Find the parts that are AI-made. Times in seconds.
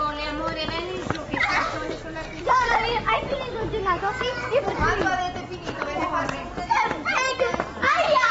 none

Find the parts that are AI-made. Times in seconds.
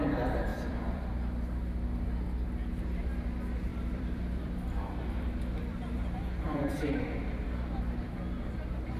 0.5-1.4 (vocoder, BigVGAN v2); 3.7-6.7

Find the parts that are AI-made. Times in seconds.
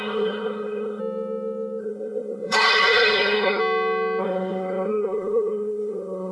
0.0-1.0 (codec, SNAC); 1.8-3.6; 4.2-6.3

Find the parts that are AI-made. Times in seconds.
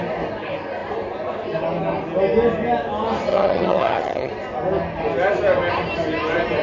3.3-4.3 (vocoder, HiFi-GAN)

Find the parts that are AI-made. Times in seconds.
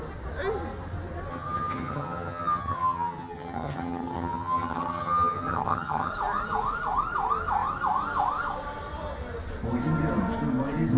1.3-6.1 (vocoder, HiFi-GAN)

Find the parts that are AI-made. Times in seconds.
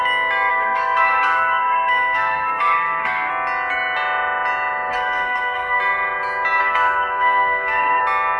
0.5-3.3 (codec, SNAC); 4.9-5.8; 6.6-8.0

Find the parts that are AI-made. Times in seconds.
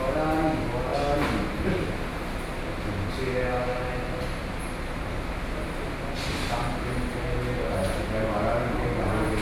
none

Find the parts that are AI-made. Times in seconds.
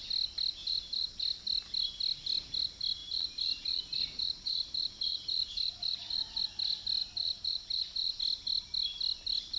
0.6-1.1 (vocoder, BigVGAN v2); 3.0-6.4; 7.0-8.2